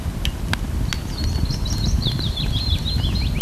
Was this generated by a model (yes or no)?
no